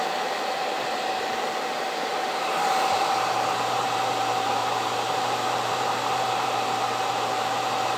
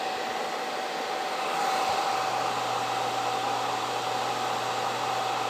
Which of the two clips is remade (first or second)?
first